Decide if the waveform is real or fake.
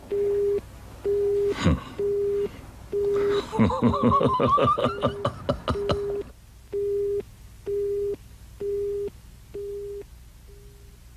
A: real